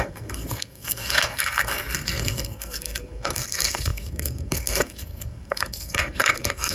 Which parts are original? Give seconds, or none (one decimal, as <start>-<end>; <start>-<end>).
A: none